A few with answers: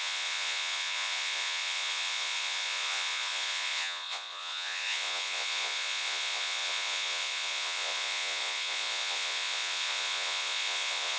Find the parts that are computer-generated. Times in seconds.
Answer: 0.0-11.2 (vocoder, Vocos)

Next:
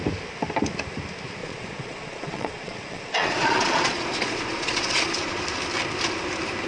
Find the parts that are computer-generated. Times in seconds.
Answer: 1.4-5.4 (vocoder, Vocos)

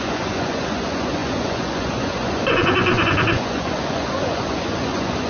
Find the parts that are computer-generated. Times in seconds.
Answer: 0.0-5.3 (vocoder, Vocos)

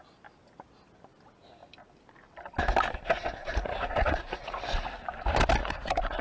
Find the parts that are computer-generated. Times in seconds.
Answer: 3.4-4.6 (vocoder, Vocos); 5.6-6.2

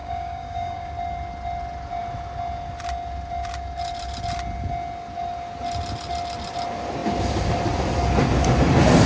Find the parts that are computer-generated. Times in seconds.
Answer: 0.0-0.9 (codec, DAC)

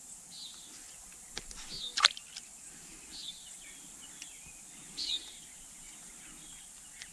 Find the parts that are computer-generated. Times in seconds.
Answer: none